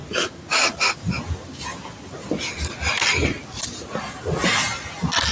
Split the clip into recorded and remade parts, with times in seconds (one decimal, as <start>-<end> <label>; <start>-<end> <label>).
0.0-5.3 recorded